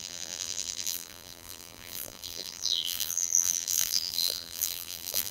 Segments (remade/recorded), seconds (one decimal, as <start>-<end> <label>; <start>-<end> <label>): 0.0-5.3 remade